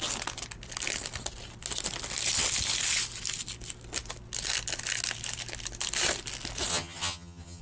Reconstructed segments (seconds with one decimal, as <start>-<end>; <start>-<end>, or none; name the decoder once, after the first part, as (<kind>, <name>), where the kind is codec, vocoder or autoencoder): 6.7-7.6 (vocoder, HiFi-GAN)